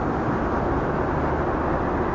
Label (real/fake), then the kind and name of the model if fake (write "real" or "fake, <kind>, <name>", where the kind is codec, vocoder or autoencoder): real